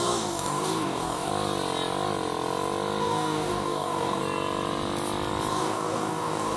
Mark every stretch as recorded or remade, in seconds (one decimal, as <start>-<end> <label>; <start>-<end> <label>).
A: 0.0-1.3 remade; 1.3-3.0 recorded; 3.0-4.2 remade; 4.2-5.5 recorded; 5.5-6.6 remade